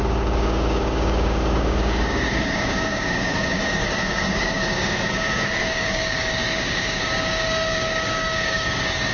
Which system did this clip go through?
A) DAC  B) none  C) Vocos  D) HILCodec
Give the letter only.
A